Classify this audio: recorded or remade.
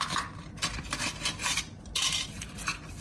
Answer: recorded